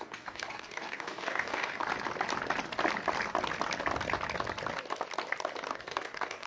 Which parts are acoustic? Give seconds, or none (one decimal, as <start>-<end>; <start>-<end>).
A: 1.8-5.7